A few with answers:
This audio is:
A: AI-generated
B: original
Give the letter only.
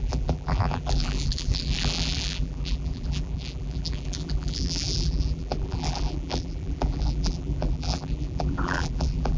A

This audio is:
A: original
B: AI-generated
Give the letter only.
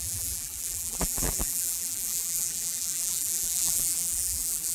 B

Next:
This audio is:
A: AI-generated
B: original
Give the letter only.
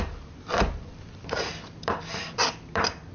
A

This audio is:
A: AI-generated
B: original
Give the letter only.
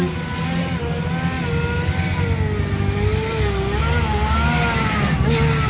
B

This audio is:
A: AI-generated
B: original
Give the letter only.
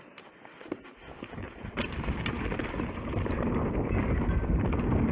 A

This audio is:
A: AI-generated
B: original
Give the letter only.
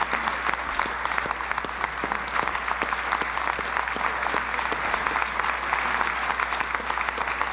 B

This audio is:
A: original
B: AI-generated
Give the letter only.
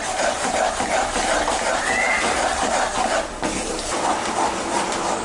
A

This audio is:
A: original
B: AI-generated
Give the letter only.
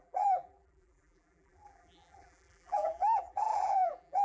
B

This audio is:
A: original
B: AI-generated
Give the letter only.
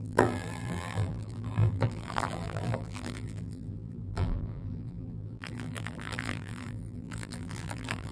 B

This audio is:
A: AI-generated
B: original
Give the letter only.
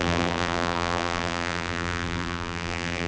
A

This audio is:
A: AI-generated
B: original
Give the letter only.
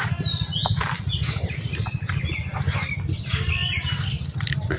B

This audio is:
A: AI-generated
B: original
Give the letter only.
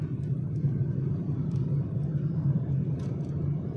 A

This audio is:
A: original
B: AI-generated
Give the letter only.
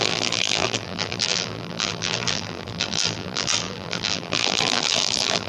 B